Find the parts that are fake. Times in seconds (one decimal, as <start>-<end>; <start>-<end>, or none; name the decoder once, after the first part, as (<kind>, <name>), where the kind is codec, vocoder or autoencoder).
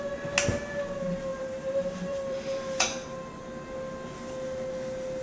1.3-3.4 (vocoder, BigVGAN v2)